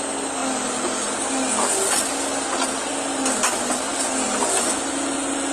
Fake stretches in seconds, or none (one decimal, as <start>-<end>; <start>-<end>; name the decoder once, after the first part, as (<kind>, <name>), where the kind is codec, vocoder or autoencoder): none